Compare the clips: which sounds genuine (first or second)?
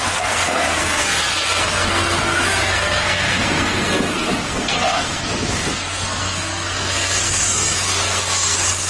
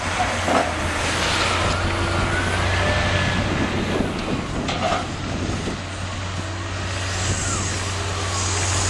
second